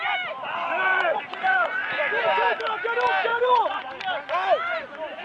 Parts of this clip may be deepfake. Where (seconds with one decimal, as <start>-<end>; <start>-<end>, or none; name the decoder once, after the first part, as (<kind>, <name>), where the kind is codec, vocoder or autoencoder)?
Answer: 0.9-1.9 (vocoder, Vocos); 3.3-3.9